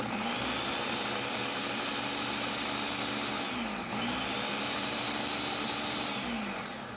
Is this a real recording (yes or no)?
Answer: yes